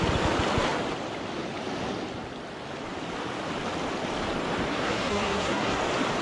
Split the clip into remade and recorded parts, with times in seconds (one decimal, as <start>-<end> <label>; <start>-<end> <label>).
0.0-4.7 recorded; 4.7-5.8 remade; 5.8-6.2 recorded